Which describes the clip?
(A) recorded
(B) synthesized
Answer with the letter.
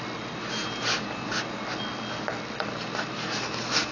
A